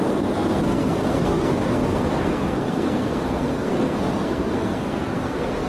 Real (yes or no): no